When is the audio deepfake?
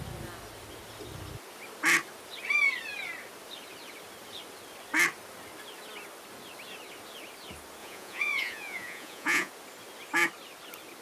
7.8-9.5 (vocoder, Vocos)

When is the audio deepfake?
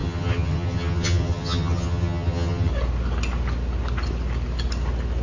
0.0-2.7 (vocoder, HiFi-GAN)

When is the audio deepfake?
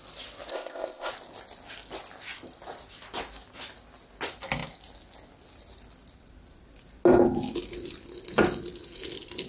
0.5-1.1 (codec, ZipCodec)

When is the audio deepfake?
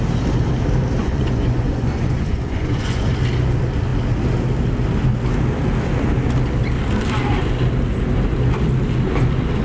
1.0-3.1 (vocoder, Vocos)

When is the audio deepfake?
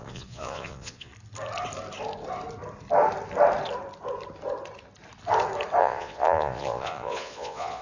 0.0-1.1 (vocoder, Vocos); 5.8-7.8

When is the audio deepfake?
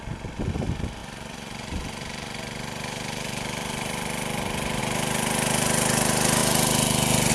1.0-4.8 (vocoder, BigVGAN v2)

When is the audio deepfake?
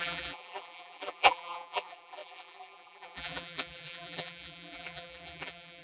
0.0-5.8 (vocoder, BigVGAN v2)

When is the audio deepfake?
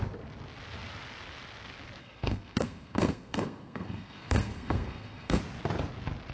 2.0-5.4 (codec, SNAC)